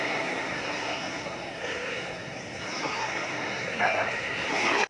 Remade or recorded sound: remade